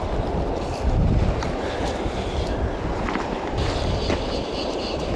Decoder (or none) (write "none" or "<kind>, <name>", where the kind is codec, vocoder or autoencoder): none